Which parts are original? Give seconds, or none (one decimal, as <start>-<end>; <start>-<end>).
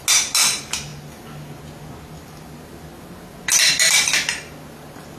0.0-5.2